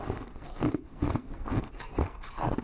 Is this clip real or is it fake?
fake